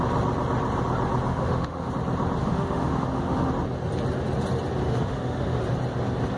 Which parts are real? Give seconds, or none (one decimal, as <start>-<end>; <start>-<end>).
0.0-1.3; 1.9-2.4; 3.5-4.8; 5.6-6.4